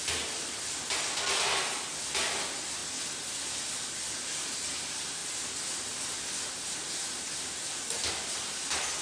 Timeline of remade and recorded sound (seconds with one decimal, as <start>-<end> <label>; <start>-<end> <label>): 0.0-9.0 recorded